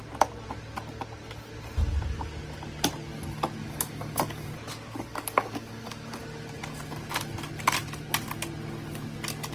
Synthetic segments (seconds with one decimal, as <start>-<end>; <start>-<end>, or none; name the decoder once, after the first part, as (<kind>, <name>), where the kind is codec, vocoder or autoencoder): 3.6-4.5 (codec, DAC); 5.1-6.2